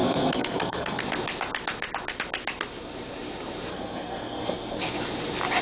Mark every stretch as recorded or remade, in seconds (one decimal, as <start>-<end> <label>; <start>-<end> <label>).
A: 0.0-1.0 remade; 1.0-3.7 recorded; 3.7-4.8 remade; 4.8-5.6 recorded